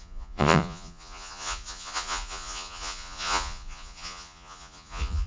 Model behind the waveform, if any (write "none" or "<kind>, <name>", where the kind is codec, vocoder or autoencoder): vocoder, Vocos